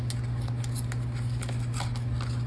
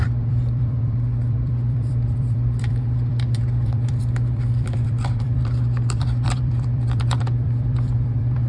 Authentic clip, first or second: first